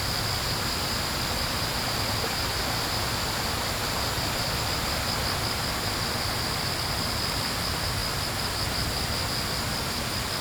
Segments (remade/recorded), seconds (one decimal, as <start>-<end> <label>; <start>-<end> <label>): 0.0-10.4 recorded